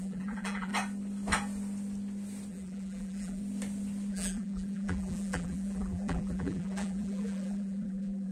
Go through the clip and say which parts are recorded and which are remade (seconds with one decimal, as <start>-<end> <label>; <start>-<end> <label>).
0.0-0.7 remade; 0.7-2.5 recorded; 2.5-3.4 remade; 3.4-4.1 recorded; 4.1-8.3 remade